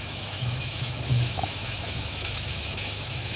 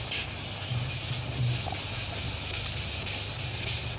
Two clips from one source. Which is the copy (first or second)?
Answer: first